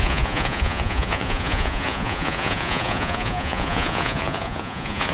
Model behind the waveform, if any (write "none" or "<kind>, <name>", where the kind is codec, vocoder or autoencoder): vocoder, Vocos